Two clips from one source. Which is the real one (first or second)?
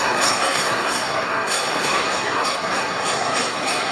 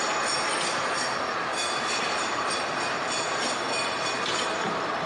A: second